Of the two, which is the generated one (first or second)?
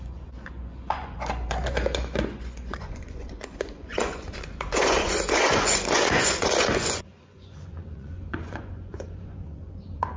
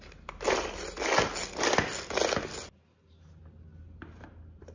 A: first